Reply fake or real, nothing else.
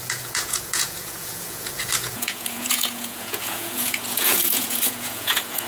fake